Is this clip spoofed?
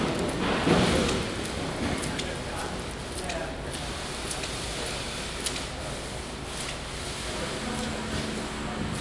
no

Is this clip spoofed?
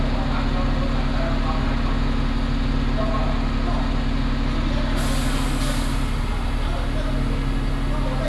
no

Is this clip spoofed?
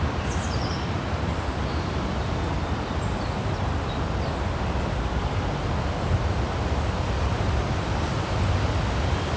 no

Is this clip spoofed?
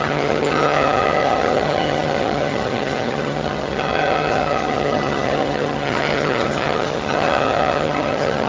yes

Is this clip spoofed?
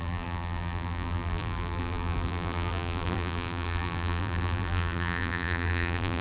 yes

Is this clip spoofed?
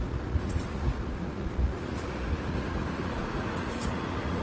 yes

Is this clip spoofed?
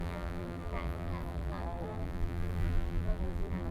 yes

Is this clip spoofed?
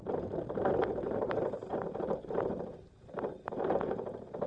yes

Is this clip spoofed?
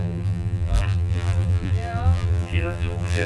yes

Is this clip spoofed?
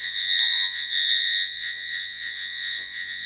yes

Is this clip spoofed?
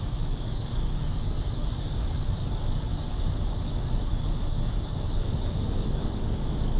yes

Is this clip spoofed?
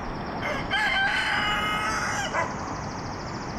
no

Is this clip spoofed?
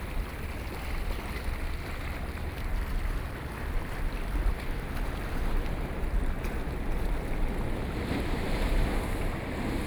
no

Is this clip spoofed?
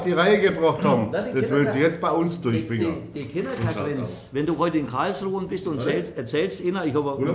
no